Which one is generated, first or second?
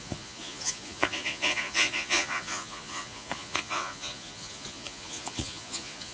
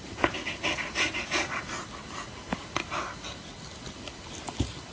first